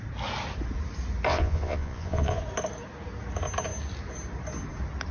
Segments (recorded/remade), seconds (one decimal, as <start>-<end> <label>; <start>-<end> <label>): 0.0-1.3 recorded; 1.3-2.4 remade; 2.4-5.1 recorded